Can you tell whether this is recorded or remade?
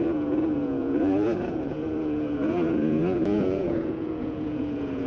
remade